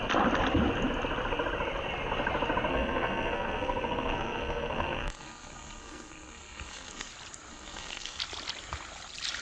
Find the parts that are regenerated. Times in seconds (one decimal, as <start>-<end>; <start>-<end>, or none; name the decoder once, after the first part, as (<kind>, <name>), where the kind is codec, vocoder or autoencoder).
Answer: 2.7-7.1 (codec, SNAC); 7.5-8.2